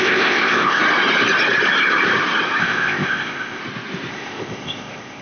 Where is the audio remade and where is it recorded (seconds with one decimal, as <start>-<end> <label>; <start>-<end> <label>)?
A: 0.0-0.8 remade; 0.8-2.6 recorded; 2.6-3.6 remade; 3.6-4.1 recorded; 4.1-5.2 remade